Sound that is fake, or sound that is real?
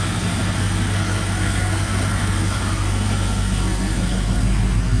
fake